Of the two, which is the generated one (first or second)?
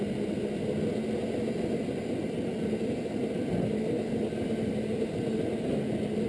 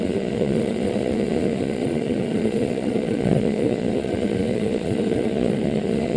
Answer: second